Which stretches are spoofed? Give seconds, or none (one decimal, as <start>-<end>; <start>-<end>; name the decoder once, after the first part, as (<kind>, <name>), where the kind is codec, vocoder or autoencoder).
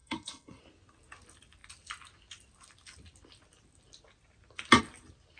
0.0-0.6 (codec, SNAC)